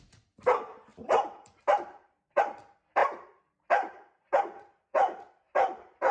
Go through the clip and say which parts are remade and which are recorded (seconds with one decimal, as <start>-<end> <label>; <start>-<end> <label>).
0.0-0.9 recorded; 0.9-2.4 remade; 2.4-3.0 recorded; 3.0-6.1 remade

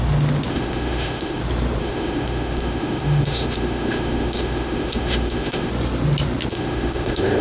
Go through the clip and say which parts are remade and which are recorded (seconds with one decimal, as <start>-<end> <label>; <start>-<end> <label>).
0.0-0.5 recorded; 0.5-1.4 remade; 1.4-1.8 recorded; 1.8-5.7 remade; 5.7-6.5 recorded; 6.5-7.4 remade

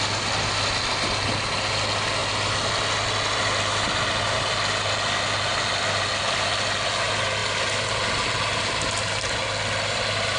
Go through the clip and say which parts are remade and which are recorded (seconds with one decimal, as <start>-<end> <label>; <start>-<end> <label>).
0.0-10.4 recorded

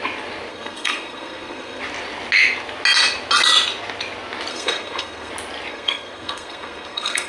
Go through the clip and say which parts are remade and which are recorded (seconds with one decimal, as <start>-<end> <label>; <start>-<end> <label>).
0.0-0.5 recorded; 0.5-1.8 remade; 1.8-4.5 recorded; 4.5-5.3 remade; 5.3-5.7 recorded; 5.7-7.3 remade

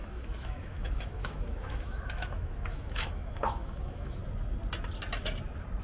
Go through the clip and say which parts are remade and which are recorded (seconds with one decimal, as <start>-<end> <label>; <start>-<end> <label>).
0.0-4.2 remade; 4.2-5.8 recorded

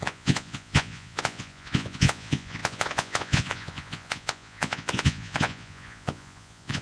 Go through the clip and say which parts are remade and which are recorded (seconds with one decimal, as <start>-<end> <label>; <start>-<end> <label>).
0.0-6.8 remade

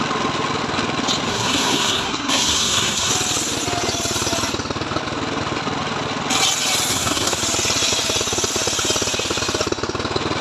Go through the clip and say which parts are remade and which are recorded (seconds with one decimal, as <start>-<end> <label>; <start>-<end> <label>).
0.0-1.3 recorded; 1.3-3.1 remade; 3.1-6.9 recorded; 6.9-7.4 remade; 7.4-10.4 recorded